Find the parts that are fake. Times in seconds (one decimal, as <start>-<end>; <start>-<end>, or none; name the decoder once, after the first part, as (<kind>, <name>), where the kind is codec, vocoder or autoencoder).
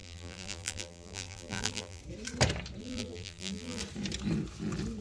0.0-2.0 (vocoder, BigVGAN v2); 2.8-3.8